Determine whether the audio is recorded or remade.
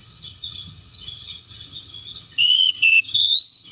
remade